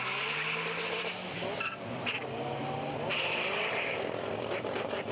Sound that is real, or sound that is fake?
real